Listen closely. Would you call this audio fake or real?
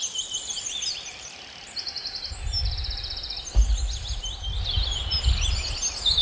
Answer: real